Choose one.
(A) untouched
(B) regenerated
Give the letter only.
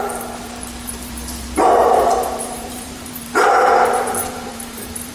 B